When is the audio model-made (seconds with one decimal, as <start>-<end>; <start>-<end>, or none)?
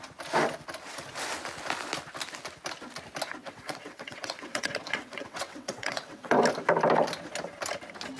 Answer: 3.4-6.4